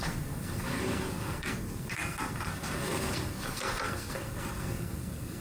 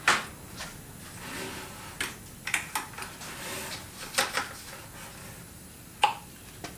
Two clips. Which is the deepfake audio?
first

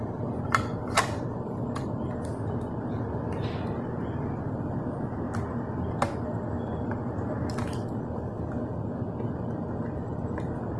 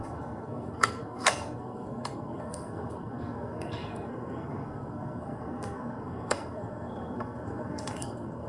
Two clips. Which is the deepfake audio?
second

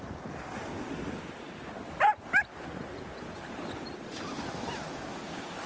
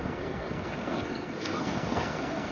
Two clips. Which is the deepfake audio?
second